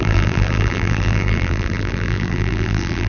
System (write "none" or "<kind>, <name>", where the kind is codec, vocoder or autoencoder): vocoder, BigVGAN v2